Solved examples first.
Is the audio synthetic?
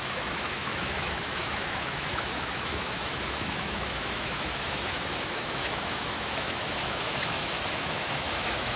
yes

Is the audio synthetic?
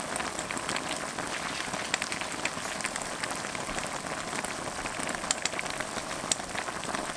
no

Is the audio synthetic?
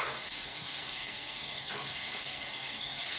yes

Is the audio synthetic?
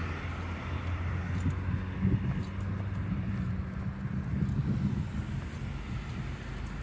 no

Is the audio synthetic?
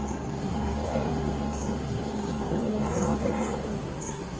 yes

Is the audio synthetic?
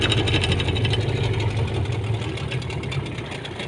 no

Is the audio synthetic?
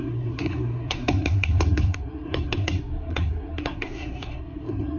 yes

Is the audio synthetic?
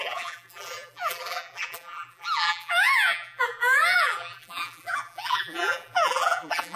yes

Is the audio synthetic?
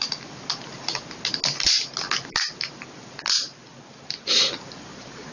no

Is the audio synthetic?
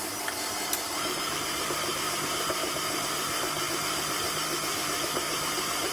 yes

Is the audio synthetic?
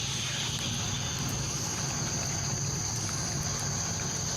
no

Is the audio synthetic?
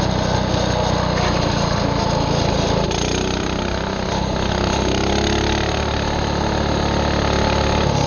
no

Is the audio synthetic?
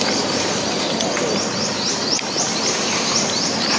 no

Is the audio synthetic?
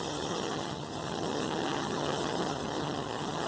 yes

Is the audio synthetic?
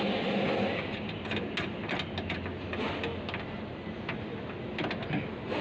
no